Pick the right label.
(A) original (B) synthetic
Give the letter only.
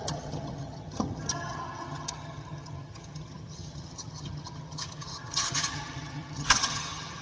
B